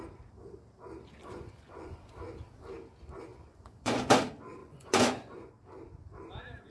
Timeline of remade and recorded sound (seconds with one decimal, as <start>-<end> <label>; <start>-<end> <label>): 0.0-1.2 recorded; 1.2-2.0 remade; 2.0-3.3 recorded; 3.3-4.0 remade; 4.0-4.6 recorded; 4.6-5.5 remade; 5.5-6.7 recorded